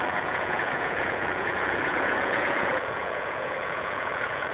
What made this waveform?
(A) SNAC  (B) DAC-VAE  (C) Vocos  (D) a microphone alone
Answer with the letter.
C